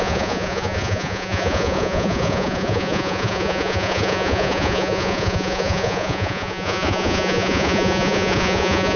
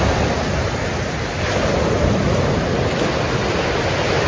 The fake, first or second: first